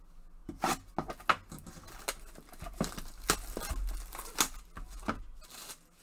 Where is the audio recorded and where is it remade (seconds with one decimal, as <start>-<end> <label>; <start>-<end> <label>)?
0.0-6.0 recorded